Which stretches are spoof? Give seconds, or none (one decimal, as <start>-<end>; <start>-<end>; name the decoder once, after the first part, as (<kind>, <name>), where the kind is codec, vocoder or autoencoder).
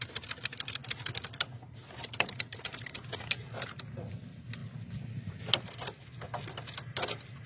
0.8-3.1 (vocoder, BigVGAN v2); 4.6-5.5